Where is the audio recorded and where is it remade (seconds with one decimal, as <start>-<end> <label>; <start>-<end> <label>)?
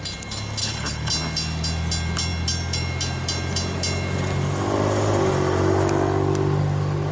0.0-0.6 recorded; 0.6-1.1 remade; 1.1-7.1 recorded